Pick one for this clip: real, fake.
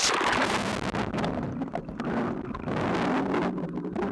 real